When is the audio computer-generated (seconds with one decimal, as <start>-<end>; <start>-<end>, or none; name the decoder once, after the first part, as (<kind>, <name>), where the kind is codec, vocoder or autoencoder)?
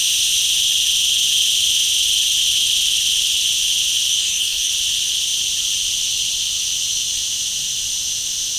4.1-4.7 (codec, DAC)